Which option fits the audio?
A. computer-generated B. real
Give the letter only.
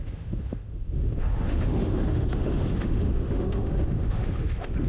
A